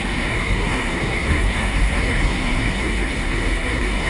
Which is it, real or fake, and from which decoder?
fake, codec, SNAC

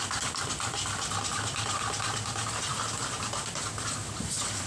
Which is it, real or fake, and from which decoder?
real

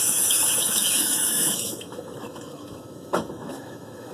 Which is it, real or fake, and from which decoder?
fake, autoencoder, DAC-VAE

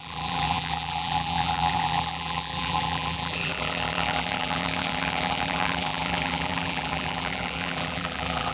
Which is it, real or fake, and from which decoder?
fake, vocoder, BigVGAN v2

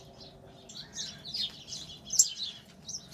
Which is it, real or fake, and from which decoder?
real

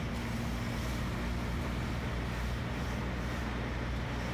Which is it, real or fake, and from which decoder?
real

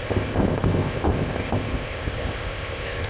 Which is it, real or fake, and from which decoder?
fake, codec, ZipCodec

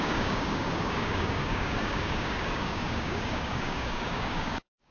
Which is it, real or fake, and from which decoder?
fake, codec, DAC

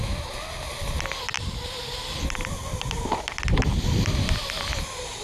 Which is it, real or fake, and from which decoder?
real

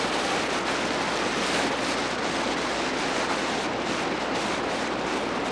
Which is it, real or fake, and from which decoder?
real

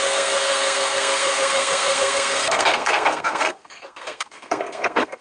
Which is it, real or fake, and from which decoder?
fake, codec, SNAC